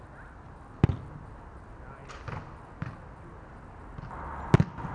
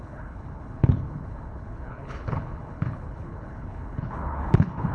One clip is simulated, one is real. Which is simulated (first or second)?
second